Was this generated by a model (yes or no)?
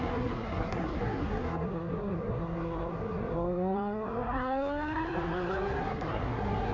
yes